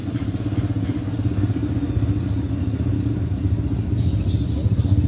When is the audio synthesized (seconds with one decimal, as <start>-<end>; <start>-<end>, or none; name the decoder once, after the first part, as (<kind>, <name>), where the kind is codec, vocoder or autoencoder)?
none